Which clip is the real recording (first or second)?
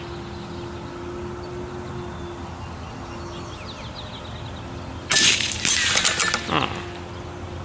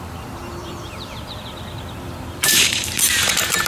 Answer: first